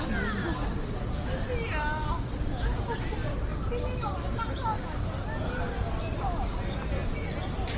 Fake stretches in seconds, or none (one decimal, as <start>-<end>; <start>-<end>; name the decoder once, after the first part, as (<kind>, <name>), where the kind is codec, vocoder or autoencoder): none